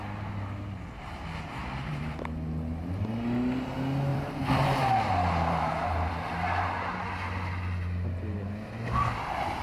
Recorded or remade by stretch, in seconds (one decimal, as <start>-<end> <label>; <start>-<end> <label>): 0.0-1.6 recorded; 1.6-2.2 remade; 2.2-4.1 recorded; 4.1-6.1 remade; 6.1-9.6 recorded